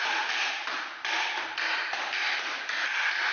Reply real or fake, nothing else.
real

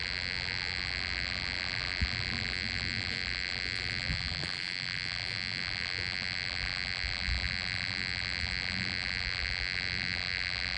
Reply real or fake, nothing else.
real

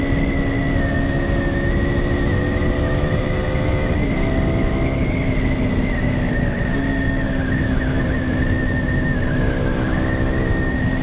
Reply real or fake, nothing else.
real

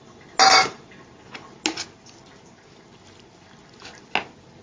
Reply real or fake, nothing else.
real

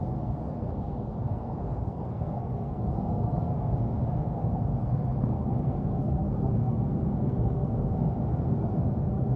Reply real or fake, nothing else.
fake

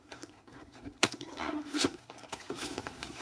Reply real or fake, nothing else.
fake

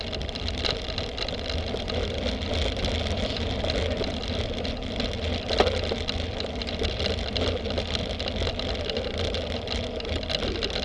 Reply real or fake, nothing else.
real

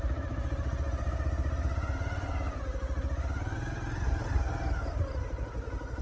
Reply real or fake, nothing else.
real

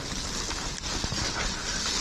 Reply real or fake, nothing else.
real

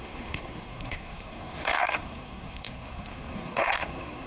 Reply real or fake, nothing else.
fake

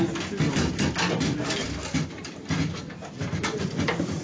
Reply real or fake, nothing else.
real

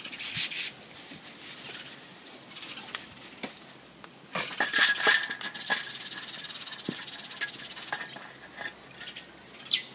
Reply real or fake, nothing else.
real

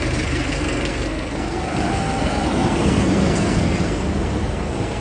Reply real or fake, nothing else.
fake